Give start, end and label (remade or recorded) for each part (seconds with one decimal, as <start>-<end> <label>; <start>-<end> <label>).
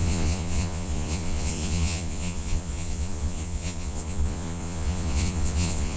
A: 0.0-6.0 remade